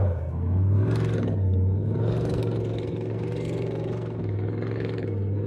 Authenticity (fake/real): fake